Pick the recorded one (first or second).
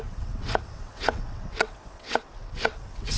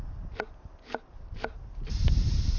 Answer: second